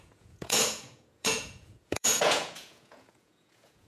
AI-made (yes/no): yes